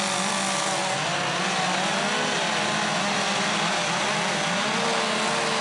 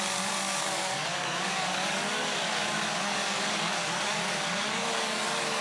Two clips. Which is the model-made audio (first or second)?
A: second